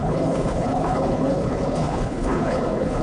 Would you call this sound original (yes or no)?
no